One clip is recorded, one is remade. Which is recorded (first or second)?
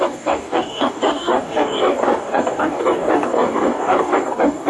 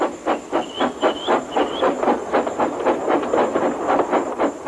second